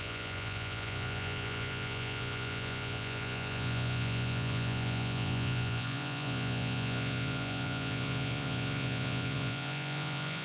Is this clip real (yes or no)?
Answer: no